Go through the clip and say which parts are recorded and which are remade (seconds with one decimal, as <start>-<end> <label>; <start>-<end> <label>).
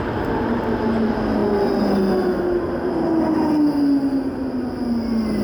0.0-5.4 recorded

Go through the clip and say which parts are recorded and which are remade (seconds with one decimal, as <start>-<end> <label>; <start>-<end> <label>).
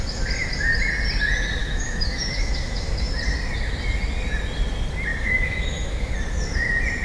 0.0-1.6 recorded; 1.6-3.1 remade; 3.1-5.1 recorded; 5.1-6.1 remade; 6.1-7.0 recorded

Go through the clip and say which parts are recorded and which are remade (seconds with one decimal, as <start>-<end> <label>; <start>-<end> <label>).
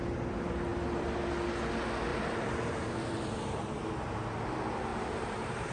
0.0-2.1 recorded; 2.1-3.9 remade; 3.9-4.9 recorded; 4.9-5.7 remade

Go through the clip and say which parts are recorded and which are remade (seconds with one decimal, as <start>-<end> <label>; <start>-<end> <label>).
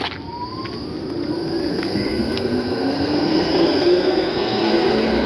0.0-1.7 recorded; 1.7-5.3 remade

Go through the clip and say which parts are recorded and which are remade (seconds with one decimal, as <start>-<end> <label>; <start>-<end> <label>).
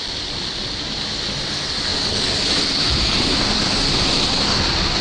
0.0-5.0 recorded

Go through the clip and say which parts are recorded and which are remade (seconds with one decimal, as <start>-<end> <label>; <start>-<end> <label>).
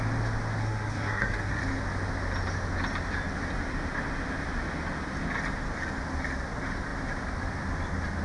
0.0-0.6 recorded; 0.6-1.6 remade; 1.6-8.2 recorded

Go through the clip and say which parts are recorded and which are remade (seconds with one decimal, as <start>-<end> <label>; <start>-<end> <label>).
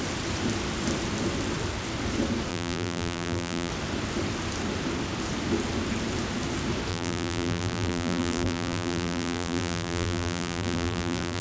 0.0-2.5 recorded; 2.5-3.7 remade; 3.7-6.9 recorded; 6.9-11.4 remade